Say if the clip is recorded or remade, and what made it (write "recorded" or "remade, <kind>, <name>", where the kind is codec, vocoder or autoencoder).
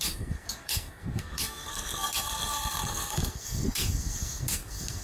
remade, codec, SNAC